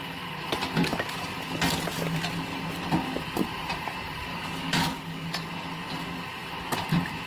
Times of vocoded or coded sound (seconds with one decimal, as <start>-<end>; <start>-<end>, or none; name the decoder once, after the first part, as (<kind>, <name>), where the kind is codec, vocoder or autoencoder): 4.3-5.5 (codec, DAC)